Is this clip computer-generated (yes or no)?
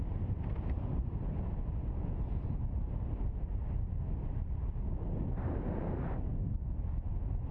no